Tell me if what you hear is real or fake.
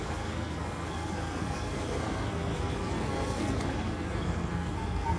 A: fake